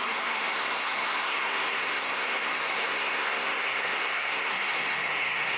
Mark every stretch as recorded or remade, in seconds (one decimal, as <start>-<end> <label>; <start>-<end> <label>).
0.0-5.6 remade